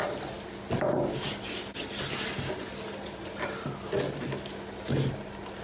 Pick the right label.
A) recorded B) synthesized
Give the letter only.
A